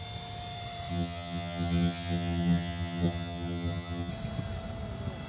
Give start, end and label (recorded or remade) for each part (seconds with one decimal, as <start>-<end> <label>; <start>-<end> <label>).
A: 0.0-0.9 recorded; 0.9-4.1 remade; 4.1-5.3 recorded